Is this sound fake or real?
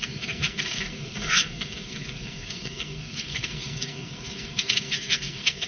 fake